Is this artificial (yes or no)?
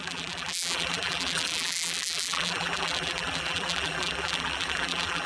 yes